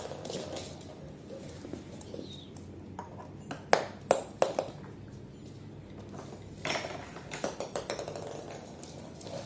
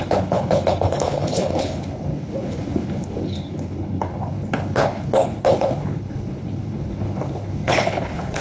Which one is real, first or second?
first